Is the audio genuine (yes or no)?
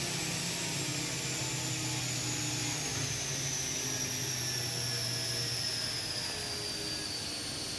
yes